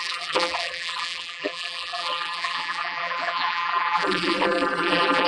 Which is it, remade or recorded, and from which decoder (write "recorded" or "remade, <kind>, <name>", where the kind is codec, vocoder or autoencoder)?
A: remade, vocoder, BigVGAN v2